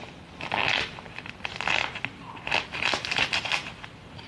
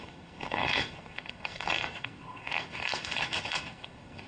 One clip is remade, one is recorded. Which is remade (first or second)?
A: second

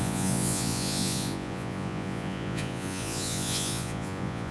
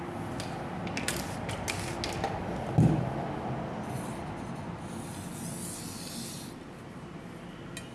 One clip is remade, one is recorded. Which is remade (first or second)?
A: first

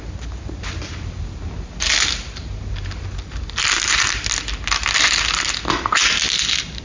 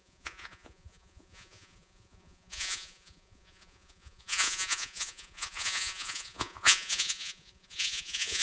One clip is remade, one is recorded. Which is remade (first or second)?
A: second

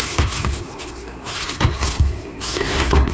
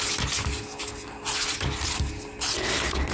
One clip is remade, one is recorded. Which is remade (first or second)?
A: first